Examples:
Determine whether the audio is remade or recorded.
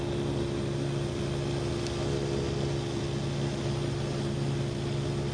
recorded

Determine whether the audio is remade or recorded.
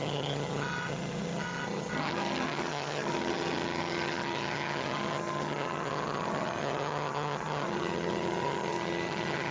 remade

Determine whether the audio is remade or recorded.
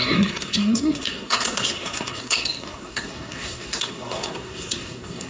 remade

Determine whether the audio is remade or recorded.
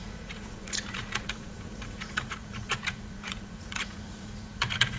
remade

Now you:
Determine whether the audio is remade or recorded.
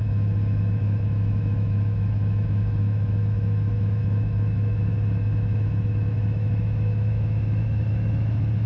remade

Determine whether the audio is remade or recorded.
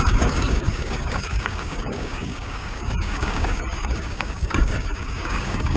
remade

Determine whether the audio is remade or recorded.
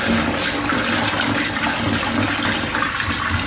recorded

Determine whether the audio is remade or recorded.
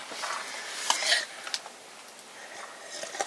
recorded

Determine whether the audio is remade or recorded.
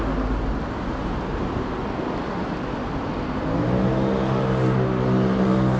recorded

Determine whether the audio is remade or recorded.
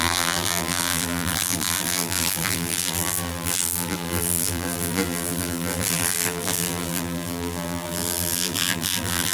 remade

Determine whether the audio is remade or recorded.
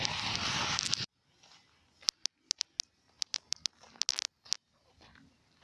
recorded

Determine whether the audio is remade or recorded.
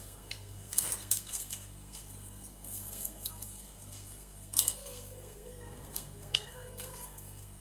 remade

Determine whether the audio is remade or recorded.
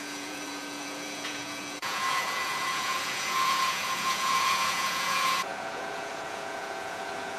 remade